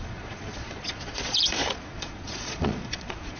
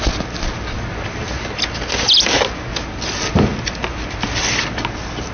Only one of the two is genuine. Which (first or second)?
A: second